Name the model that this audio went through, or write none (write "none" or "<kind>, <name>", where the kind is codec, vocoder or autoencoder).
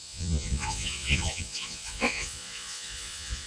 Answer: vocoder, Vocos